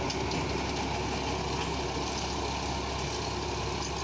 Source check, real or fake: real